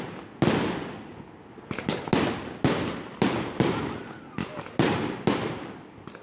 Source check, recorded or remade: recorded